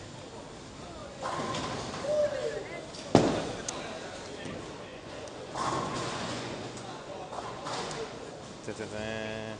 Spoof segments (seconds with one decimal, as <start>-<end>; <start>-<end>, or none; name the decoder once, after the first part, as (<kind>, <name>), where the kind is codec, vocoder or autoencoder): 1.0-1.6 (vocoder, Vocos); 4.9-8.4